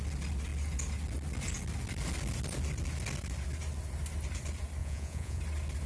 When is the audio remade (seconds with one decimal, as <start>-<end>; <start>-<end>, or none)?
4.8-5.4